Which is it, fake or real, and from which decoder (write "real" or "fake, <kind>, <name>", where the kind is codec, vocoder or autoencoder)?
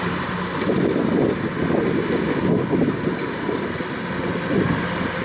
real